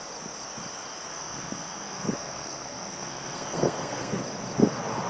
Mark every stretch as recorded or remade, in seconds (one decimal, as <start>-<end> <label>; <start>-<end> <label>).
0.0-1.1 recorded; 1.1-4.2 remade; 4.2-5.1 recorded